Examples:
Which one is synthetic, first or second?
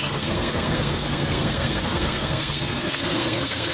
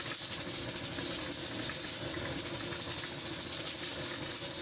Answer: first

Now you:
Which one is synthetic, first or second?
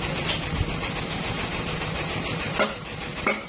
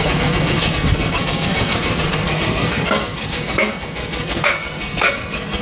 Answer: second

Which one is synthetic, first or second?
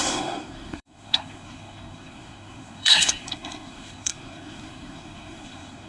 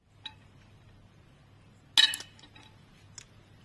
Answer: first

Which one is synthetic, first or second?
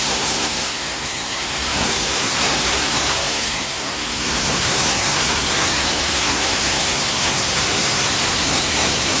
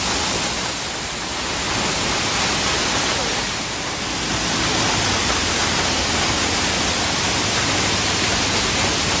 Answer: first